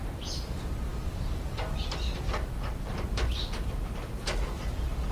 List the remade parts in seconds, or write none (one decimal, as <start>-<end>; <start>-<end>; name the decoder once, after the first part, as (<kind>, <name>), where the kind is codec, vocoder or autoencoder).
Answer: 0.9-3.4 (vocoder, BigVGAN v2)